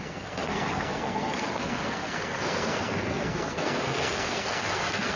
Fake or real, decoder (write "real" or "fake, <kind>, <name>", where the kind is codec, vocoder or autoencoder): fake, codec, SNAC